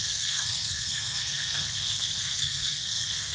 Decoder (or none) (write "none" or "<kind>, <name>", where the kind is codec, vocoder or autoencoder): codec, SNAC